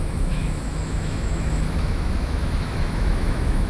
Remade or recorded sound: remade